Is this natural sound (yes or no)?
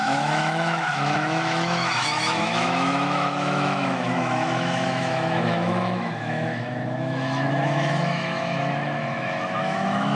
no